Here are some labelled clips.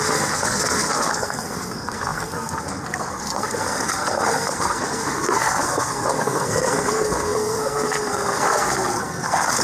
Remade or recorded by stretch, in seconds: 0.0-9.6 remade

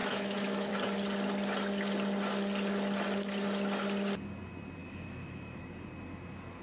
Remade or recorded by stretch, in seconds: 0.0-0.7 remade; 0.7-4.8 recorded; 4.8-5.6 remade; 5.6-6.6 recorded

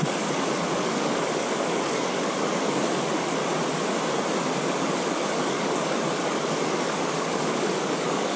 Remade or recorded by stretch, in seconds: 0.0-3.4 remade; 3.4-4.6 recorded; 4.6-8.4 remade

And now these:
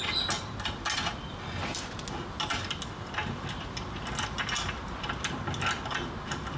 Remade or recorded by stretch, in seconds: 0.0-6.6 recorded

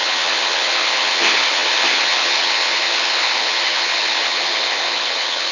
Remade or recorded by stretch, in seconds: 0.0-5.5 remade